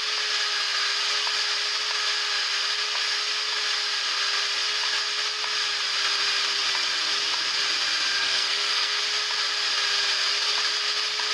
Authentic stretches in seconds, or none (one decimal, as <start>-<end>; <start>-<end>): 0.0-8.2; 9.0-11.3

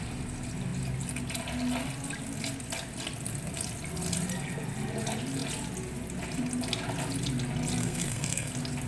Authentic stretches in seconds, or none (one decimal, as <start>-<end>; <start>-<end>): 0.0-7.8; 8.5-8.9

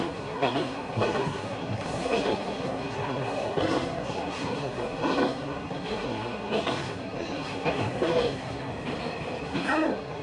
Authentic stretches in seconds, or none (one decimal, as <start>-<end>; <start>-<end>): 8.7-9.4

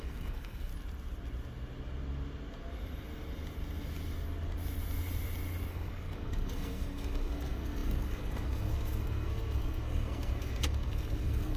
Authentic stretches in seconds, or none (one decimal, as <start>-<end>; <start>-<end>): 0.7-5.7

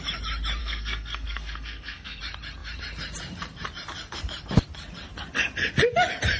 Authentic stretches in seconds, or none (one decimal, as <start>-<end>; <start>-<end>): 0.0-0.6; 2.2-6.4

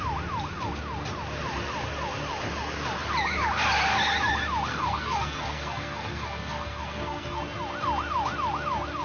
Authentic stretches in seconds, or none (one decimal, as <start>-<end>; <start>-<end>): 0.0-4.7; 7.4-9.0

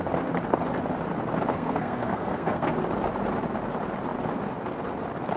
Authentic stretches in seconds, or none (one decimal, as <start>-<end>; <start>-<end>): 0.0-1.5; 2.7-5.4

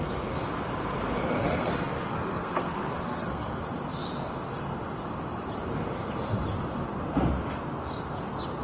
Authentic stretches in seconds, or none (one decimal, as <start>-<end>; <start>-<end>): 0.0-1.4; 3.6-8.6